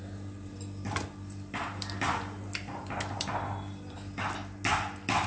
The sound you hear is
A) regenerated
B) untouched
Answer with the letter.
B